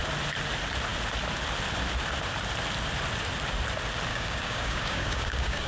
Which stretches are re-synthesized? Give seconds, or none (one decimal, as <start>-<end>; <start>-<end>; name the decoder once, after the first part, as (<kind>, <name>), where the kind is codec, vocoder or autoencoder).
4.1-5.7 (codec, DAC)